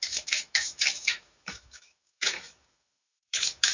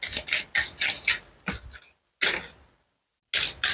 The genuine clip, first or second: second